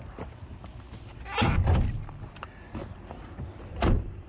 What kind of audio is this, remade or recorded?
recorded